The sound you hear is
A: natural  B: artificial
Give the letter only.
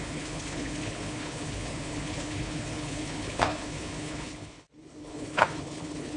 B